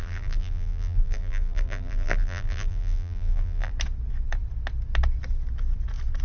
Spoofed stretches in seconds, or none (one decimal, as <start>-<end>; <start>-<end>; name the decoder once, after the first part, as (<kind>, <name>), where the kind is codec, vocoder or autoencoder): 0.0-3.7 (vocoder, BigVGAN v2)